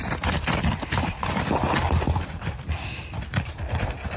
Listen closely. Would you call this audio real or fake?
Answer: real